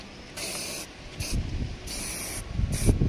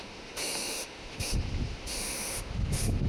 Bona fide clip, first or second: first